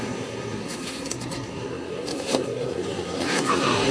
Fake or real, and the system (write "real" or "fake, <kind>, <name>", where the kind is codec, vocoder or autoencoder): fake, codec, SNAC